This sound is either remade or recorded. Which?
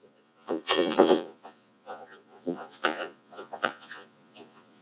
remade